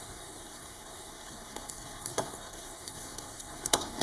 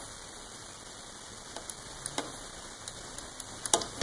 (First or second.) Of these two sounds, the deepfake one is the first